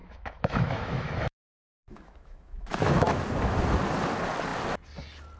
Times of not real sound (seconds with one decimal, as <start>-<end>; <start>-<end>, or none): 0.0-3.2